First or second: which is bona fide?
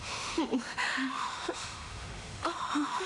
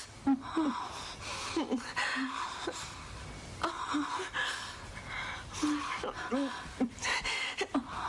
second